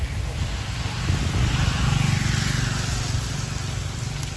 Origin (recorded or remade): recorded